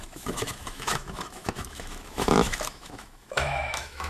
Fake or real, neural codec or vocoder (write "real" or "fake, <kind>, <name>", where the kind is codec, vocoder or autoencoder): fake, autoencoder, DAC-VAE